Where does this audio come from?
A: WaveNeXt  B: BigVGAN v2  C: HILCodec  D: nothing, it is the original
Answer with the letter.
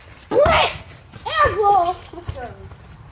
D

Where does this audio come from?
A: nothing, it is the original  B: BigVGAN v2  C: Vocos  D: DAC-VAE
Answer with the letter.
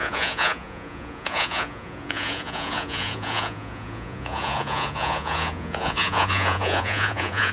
C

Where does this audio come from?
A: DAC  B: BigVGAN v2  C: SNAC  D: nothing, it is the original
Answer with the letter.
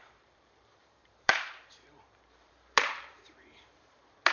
B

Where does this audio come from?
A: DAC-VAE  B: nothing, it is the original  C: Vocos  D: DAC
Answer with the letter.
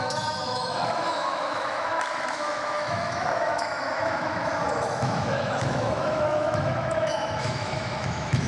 A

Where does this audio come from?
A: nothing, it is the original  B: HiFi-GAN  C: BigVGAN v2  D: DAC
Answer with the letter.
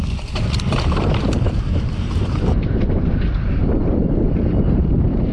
C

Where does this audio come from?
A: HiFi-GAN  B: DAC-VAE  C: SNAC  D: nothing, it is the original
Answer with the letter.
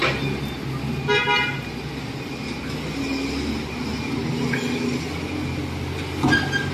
D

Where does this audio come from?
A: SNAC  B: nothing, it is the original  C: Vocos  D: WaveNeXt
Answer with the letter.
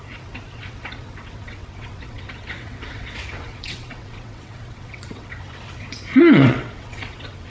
D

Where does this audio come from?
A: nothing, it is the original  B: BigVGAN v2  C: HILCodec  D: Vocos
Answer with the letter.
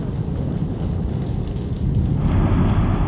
A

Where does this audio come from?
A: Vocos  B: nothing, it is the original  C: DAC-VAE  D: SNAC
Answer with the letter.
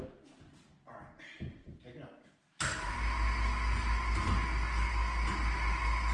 B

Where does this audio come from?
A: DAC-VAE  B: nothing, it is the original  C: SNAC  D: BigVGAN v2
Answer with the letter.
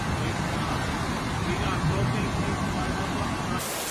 B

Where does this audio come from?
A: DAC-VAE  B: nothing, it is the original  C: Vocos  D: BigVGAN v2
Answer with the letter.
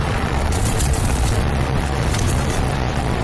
C